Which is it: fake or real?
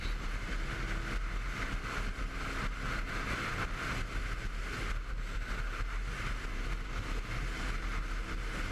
real